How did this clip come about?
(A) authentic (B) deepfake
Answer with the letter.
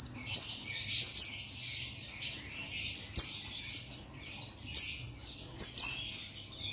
A